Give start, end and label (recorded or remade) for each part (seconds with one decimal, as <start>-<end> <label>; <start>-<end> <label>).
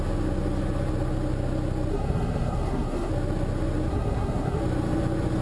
0.0-1.9 recorded; 1.9-3.1 remade; 3.1-3.9 recorded; 3.9-4.6 remade; 4.6-5.4 recorded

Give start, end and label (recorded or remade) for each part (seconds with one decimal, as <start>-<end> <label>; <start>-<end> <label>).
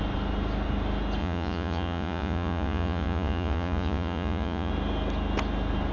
0.0-1.2 recorded; 1.2-4.7 remade; 4.7-5.9 recorded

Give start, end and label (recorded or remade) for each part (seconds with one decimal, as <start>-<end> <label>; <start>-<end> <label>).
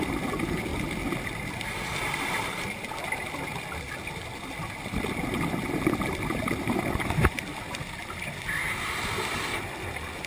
0.0-10.3 remade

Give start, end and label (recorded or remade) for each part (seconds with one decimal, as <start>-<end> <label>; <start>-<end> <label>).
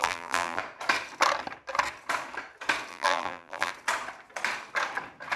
0.0-0.6 remade; 0.6-2.9 recorded; 2.9-3.7 remade; 3.7-5.4 recorded